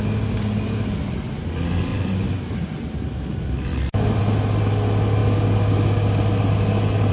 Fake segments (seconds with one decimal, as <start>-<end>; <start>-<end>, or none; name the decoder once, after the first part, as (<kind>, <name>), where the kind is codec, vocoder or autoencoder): 1.9-2.9 (vocoder, BigVGAN v2); 3.7-4.2